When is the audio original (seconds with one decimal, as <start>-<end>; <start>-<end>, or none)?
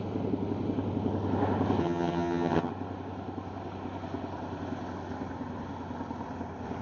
0.0-1.8; 2.7-6.8